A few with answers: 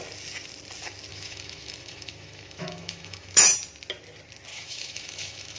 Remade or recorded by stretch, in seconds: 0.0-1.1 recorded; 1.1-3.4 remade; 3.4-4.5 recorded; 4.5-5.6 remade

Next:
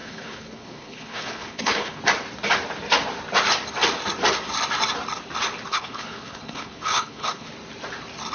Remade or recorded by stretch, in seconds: 0.0-2.0 remade; 2.0-5.7 recorded; 5.7-7.5 remade; 7.5-8.3 recorded

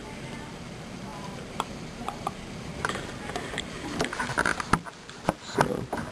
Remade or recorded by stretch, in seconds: 0.0-4.5 remade; 4.5-5.3 recorded; 5.3-6.1 remade